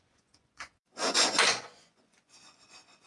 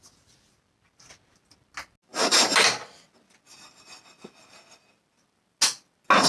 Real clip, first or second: second